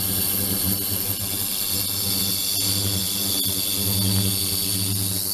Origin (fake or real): real